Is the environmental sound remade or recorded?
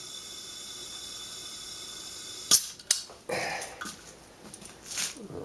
recorded